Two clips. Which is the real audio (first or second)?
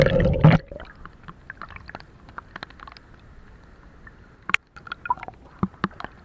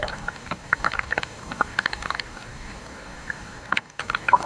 first